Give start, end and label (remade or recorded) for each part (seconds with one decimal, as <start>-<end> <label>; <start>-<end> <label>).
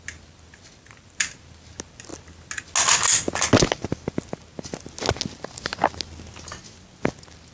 0.0-7.5 recorded